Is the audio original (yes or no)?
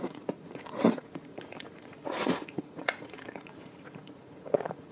no